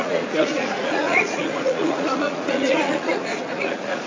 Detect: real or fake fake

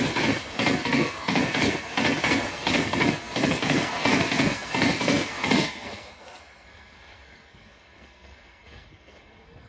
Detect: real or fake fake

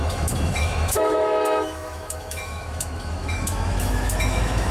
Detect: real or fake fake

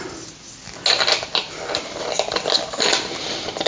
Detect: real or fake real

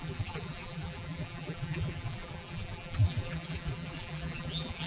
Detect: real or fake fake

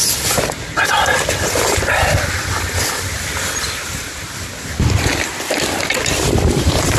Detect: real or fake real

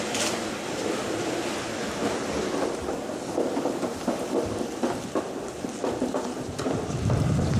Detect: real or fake fake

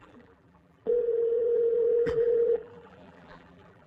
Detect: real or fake fake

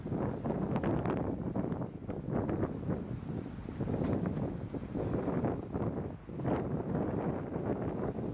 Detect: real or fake real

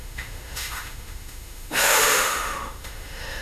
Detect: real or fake fake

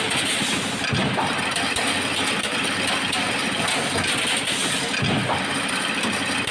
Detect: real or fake real